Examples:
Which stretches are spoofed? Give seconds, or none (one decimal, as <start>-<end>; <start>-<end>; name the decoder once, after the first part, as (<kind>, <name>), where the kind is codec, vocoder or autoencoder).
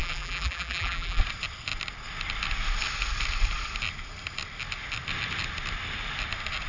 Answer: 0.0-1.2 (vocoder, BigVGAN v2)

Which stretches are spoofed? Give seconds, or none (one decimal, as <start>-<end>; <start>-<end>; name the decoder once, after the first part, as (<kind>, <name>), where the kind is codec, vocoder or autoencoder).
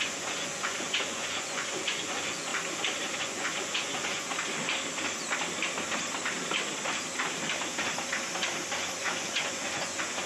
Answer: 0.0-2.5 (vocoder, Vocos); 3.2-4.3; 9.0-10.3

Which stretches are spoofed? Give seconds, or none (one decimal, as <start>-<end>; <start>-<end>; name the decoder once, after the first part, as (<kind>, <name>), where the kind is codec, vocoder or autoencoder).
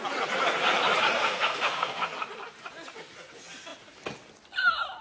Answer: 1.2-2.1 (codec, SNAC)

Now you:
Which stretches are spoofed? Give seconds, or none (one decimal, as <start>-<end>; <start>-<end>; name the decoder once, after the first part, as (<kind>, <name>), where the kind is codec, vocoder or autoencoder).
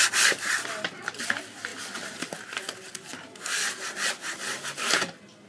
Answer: none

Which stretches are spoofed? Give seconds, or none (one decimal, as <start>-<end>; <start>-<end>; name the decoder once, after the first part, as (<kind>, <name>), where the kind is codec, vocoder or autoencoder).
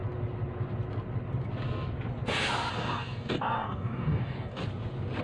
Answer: 2.7-4.6 (codec, DAC)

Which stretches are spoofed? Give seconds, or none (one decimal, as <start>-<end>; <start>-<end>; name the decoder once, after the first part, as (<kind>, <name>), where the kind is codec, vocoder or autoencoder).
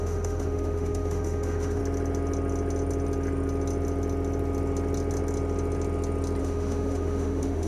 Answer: 0.0-1.8 (autoencoder, DAC-VAE); 6.4-7.7